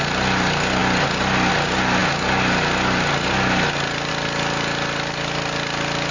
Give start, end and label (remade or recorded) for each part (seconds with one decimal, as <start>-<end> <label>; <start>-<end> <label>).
0.0-6.1 recorded